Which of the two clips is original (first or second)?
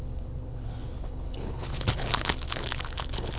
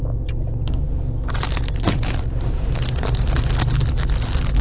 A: second